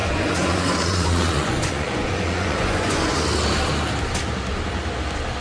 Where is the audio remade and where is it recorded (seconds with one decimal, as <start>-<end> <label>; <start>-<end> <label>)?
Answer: 0.0-3.2 remade; 3.2-5.4 recorded